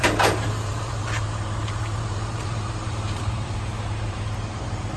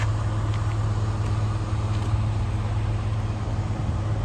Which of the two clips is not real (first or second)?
first